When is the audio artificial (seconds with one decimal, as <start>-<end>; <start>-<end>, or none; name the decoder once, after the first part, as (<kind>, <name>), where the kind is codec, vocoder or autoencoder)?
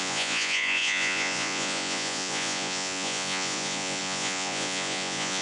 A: 0.0-5.4 (vocoder, Vocos)